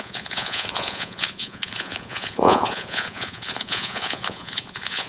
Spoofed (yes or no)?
yes